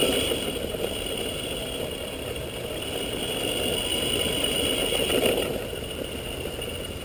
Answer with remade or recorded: recorded